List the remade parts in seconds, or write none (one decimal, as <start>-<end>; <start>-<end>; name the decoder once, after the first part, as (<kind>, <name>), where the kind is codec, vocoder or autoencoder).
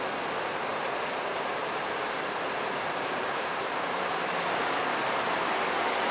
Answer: 0.7-4.4 (vocoder, BigVGAN v2)